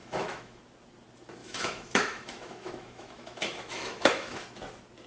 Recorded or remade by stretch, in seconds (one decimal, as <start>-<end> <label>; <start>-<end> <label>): 0.0-0.6 remade; 0.6-1.4 recorded; 1.4-4.4 remade; 4.4-5.1 recorded